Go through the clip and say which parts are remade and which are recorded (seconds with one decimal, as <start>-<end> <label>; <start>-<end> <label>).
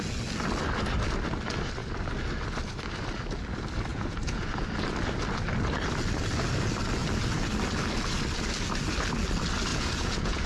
0.0-3.9 recorded; 3.9-4.6 remade; 4.6-9.7 recorded; 9.7-10.5 remade